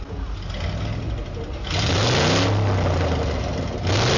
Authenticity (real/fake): real